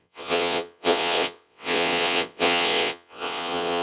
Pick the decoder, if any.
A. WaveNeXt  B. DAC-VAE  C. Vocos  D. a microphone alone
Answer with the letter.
A